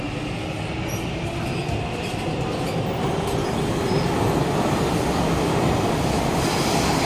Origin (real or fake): real